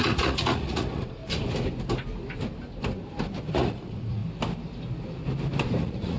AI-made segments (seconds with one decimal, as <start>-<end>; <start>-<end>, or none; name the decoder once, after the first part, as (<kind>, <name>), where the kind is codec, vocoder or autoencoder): 0.0-1.2 (vocoder, Vocos); 3.5-4.2; 5.8-6.2